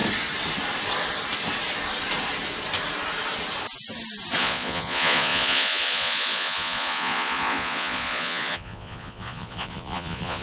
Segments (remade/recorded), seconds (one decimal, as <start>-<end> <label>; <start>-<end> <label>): 0.0-4.4 recorded; 4.4-10.4 remade